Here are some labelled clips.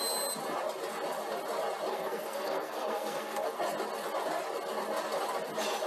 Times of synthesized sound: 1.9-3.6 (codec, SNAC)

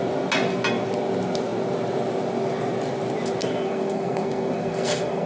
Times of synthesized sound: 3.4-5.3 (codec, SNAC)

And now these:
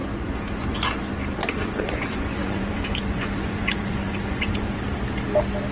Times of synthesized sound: 0.0-0.9 (vocoder, Vocos); 1.4-4.8